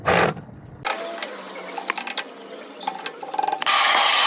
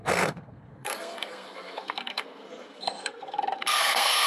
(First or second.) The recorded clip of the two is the first